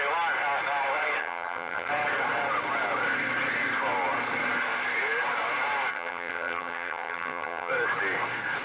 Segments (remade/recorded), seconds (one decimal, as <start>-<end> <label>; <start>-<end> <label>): 0.0-1.2 recorded; 1.2-1.9 remade; 1.9-5.9 recorded; 5.9-7.7 remade; 7.7-8.6 recorded